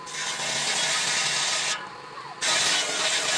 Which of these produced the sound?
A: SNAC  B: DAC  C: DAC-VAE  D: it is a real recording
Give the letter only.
D